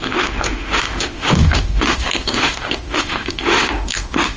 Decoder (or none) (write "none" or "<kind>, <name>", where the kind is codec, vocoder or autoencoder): autoencoder, DAC-VAE